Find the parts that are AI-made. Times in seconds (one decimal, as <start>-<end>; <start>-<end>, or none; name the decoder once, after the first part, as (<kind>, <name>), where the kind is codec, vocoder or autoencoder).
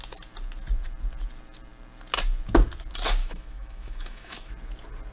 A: 3.2-4.5 (autoencoder, DAC-VAE)